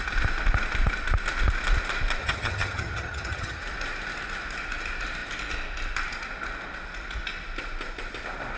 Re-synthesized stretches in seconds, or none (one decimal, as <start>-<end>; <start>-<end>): 2.2-3.6